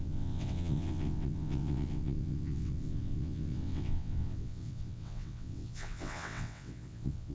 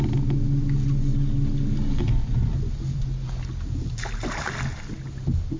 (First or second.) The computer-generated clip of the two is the first